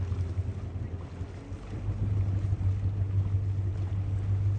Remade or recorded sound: recorded